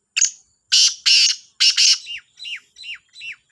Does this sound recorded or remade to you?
recorded